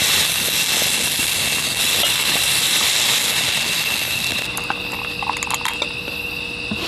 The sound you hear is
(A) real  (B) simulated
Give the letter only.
A